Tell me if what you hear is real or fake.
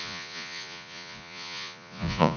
fake